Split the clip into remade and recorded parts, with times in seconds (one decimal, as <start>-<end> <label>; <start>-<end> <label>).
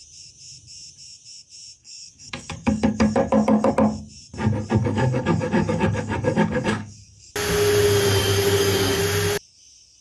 0.0-1.8 recorded; 1.8-3.7 remade; 3.7-4.8 recorded; 4.8-7.3 remade; 7.3-8.2 recorded; 8.2-9.0 remade; 9.0-10.0 recorded